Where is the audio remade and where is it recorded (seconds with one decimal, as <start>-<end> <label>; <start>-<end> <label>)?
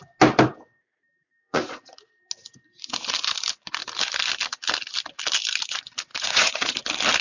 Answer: 0.0-1.4 recorded; 1.4-2.1 remade; 2.1-6.1 recorded; 6.1-6.8 remade; 6.8-7.2 recorded